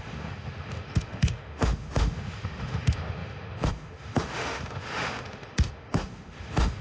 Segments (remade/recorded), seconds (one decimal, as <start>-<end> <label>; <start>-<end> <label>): 0.0-6.8 remade

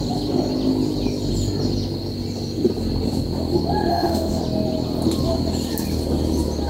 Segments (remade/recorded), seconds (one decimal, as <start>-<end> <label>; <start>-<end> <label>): 0.0-3.9 recorded; 3.9-4.4 remade; 4.4-6.7 recorded

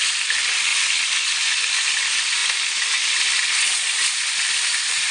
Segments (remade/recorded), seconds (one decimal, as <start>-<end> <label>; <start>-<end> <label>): 0.0-5.1 recorded

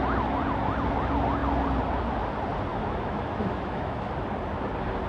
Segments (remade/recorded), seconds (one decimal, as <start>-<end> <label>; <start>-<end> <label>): 0.0-2.7 recorded; 2.7-4.1 remade; 4.1-5.1 recorded